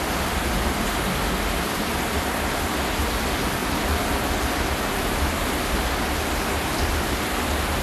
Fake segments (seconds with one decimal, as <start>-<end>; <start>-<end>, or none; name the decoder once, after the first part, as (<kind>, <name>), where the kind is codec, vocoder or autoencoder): none